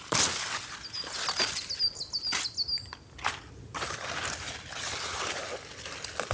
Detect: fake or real real